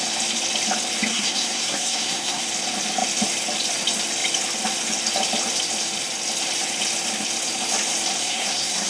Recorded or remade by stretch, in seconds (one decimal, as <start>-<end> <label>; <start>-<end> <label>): 0.0-1.1 recorded; 1.1-2.4 remade; 2.4-8.2 recorded; 8.2-8.9 remade

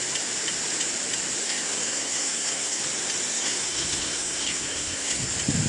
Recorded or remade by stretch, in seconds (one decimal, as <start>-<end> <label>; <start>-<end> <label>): 0.0-1.4 recorded; 1.4-2.8 remade; 2.8-3.3 recorded; 3.3-5.3 remade; 5.3-5.7 recorded

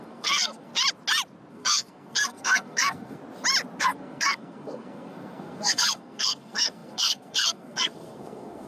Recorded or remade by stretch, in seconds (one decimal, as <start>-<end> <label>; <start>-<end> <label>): 0.0-0.7 remade; 0.7-1.5 recorded; 1.5-3.2 remade; 3.2-3.8 recorded; 3.8-8.7 remade

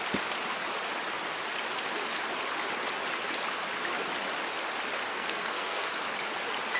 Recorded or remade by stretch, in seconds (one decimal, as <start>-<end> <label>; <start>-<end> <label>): 0.0-5.1 recorded; 5.1-5.9 remade; 5.9-6.8 recorded

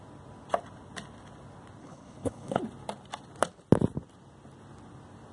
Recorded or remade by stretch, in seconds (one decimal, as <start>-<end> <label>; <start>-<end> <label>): 0.0-1.8 recorded; 1.8-2.6 remade; 2.6-5.3 recorded